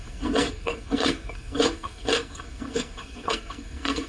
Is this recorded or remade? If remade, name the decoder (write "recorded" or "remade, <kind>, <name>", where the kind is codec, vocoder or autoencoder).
remade, codec, SNAC